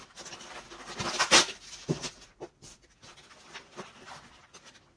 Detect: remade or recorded recorded